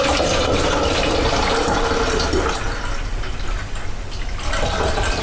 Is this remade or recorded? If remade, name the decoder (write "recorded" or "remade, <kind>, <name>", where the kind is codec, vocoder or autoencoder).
recorded